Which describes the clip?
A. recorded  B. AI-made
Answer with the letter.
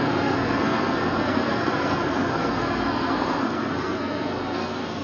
B